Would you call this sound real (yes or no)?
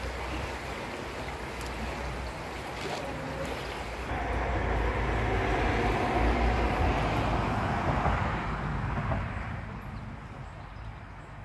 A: yes